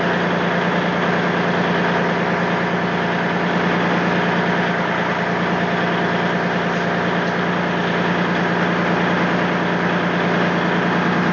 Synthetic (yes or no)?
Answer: no